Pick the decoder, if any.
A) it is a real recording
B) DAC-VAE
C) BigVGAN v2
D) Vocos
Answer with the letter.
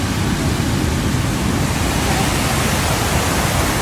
A